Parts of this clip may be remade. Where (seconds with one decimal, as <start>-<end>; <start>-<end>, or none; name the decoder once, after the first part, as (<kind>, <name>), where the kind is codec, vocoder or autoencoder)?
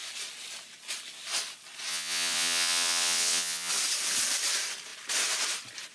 1.9-3.7 (vocoder, WaveNeXt)